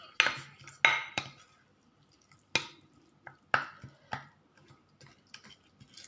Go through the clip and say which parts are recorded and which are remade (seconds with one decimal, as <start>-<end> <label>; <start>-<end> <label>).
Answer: 0.0-1.0 recorded; 1.0-2.5 remade; 2.5-6.1 recorded